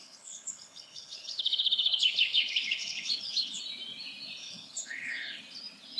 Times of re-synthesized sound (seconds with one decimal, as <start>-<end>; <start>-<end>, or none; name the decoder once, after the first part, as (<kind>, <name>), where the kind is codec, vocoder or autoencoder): 0.0-3.6 (codec, HILCodec); 4.4-5.4